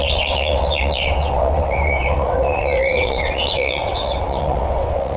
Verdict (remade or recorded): remade